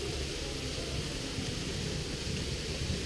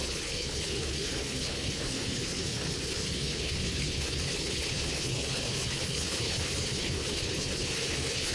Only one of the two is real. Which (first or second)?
first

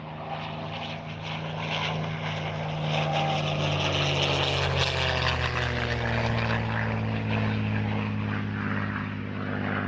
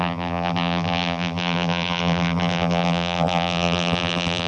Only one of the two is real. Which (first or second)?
first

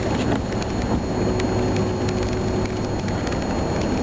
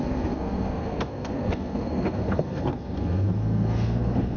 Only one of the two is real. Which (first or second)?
first